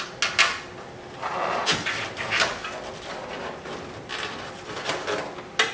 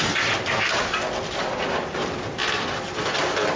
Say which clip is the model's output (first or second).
second